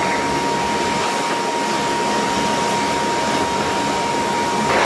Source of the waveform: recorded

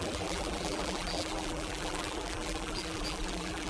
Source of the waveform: remade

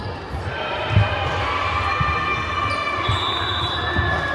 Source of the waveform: recorded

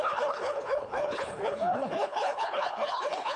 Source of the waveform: remade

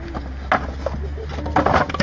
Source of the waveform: recorded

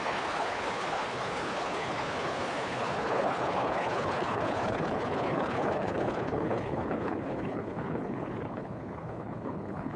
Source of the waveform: remade